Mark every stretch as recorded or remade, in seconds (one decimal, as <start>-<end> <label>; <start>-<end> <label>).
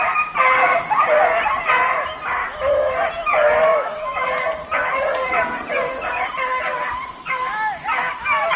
0.0-2.4 recorded; 2.4-2.9 remade; 2.9-3.7 recorded; 3.7-4.3 remade; 4.3-8.6 recorded